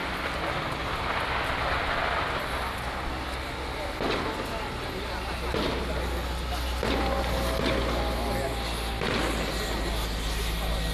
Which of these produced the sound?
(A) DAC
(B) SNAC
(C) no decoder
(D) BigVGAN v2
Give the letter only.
C